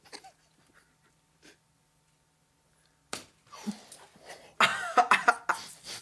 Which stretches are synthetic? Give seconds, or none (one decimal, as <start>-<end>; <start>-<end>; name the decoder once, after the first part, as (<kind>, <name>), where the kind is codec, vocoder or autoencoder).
4.7-5.3 (vocoder, BigVGAN v2)